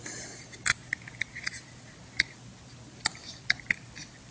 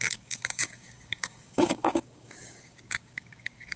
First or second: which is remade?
second